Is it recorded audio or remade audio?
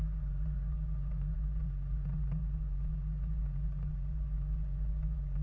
remade